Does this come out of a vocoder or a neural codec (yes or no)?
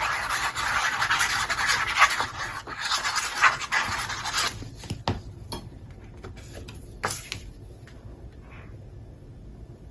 no